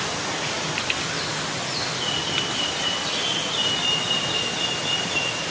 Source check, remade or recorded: recorded